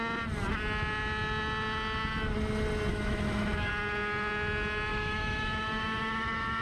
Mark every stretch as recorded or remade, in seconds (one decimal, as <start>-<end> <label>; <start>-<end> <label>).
0.0-2.9 recorded; 2.9-3.7 remade; 3.7-4.9 recorded; 4.9-6.6 remade